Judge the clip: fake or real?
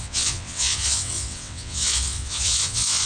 fake